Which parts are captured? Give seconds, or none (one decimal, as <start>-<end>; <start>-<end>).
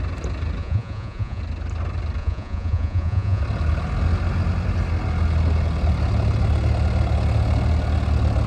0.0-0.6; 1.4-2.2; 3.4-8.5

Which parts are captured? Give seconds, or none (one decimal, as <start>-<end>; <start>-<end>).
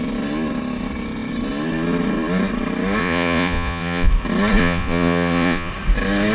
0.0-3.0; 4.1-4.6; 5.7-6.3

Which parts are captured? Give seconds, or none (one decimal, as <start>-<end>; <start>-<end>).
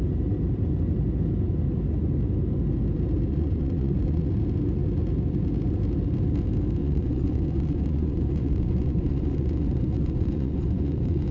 0.0-3.3; 4.3-6.8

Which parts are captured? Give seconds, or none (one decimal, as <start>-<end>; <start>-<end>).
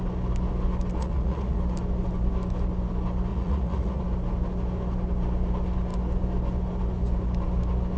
0.0-1.0; 1.6-3.3; 4.0-8.0